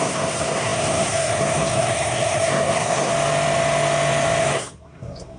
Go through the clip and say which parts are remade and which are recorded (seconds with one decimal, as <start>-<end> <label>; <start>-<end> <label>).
0.0-3.1 remade; 3.1-4.4 recorded; 4.4-5.4 remade

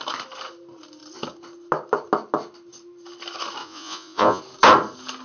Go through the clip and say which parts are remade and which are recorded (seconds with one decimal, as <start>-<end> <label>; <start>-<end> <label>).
0.0-3.6 recorded; 3.6-4.4 remade; 4.4-5.2 recorded

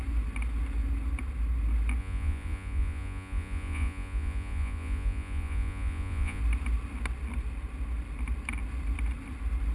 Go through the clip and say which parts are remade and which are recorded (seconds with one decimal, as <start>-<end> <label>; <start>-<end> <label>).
0.0-2.0 recorded; 2.0-6.4 remade; 6.4-9.7 recorded

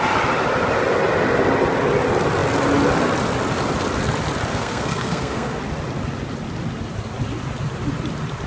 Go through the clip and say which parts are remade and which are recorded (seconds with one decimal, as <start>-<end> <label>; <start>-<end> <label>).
0.0-4.5 recorded; 4.5-5.6 remade; 5.6-8.5 recorded

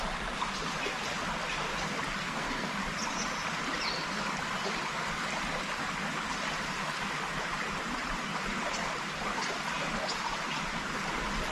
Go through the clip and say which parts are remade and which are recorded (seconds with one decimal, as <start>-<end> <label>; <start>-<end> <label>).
0.0-2.2 recorded; 2.2-2.7 remade; 2.7-11.5 recorded

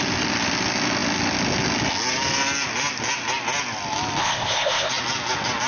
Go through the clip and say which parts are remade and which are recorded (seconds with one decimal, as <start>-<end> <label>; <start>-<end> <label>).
0.0-4.2 recorded; 4.2-4.9 remade; 4.9-5.7 recorded